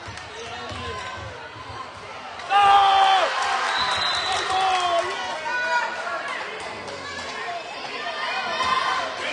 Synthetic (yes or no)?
no